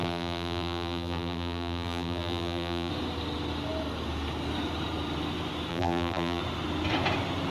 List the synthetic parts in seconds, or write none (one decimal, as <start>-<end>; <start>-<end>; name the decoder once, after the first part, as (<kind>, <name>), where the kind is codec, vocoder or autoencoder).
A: 0.0-2.9 (vocoder, BigVGAN v2); 5.7-6.4